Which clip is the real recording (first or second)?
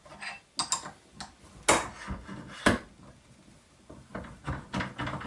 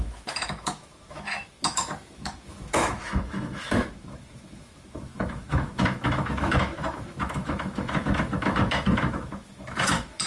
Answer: first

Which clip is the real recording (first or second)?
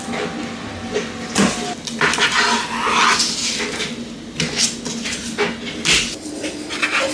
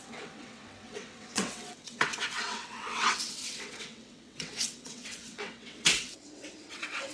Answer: first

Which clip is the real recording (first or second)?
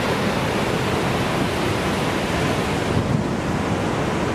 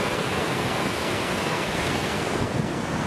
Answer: first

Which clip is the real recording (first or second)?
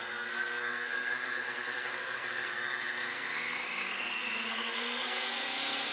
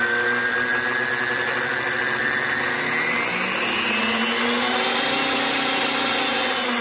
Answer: second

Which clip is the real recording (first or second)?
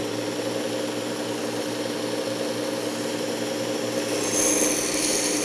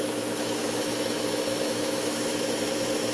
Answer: first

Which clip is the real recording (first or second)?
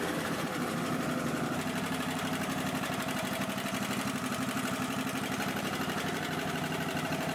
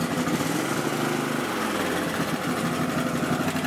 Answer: second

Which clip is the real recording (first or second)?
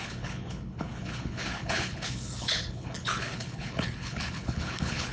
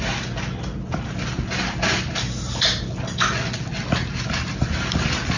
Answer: second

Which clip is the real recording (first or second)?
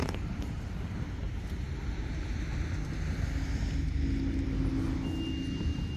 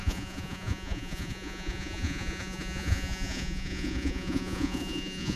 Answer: first